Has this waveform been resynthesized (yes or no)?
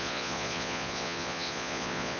yes